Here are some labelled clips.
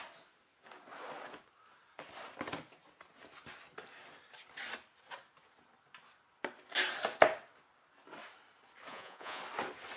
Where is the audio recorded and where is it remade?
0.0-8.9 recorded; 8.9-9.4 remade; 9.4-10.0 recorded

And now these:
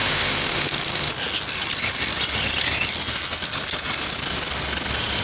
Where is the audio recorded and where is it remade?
0.0-1.1 remade; 1.1-5.2 recorded

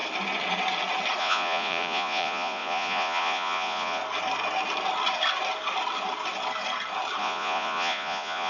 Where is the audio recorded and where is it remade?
0.0-1.2 recorded; 1.2-4.0 remade; 4.0-7.2 recorded; 7.2-8.5 remade

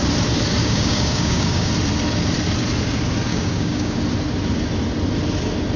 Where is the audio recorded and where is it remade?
0.0-0.6 recorded; 0.6-1.7 remade; 1.7-3.3 recorded; 3.3-4.0 remade; 4.0-5.8 recorded

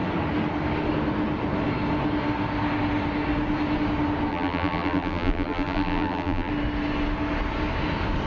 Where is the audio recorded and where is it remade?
0.0-4.3 recorded; 4.3-6.5 remade; 6.5-8.3 recorded

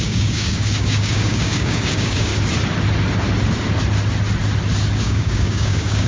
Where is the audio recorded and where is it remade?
0.0-2.3 remade; 2.3-5.0 recorded; 5.0-6.1 remade

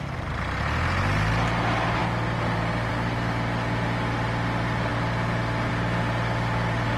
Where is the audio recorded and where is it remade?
0.0-7.0 recorded

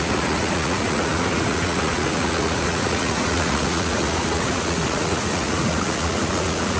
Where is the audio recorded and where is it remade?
0.0-6.8 remade